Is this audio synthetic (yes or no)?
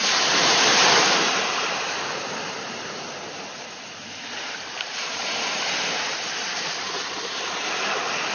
yes